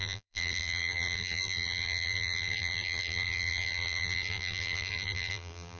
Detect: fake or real fake